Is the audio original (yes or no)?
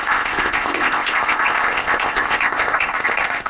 no